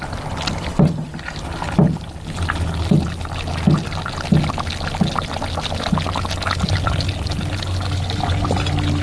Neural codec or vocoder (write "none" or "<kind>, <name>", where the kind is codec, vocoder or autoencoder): none